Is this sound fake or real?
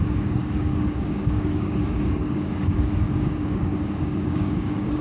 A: fake